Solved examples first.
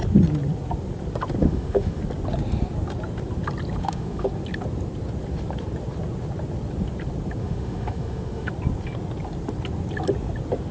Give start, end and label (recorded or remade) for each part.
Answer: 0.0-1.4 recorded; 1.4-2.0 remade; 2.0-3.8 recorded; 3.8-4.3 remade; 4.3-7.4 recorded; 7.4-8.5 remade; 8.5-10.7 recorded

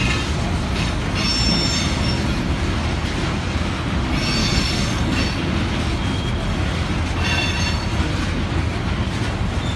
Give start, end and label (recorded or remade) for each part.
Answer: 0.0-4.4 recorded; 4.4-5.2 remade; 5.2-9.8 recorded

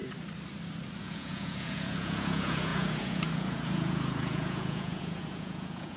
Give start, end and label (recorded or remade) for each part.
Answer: 0.0-1.0 recorded; 1.0-6.0 remade

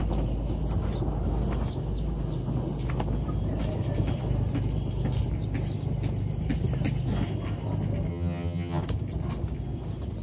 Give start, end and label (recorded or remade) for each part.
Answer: 0.0-8.1 recorded; 8.1-8.8 remade; 8.8-10.2 recorded

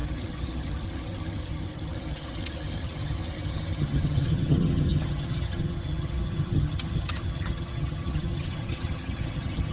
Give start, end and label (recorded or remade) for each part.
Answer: 0.0-9.7 remade

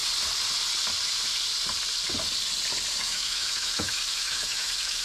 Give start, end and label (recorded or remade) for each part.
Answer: 0.0-3.0 recorded; 3.0-5.0 remade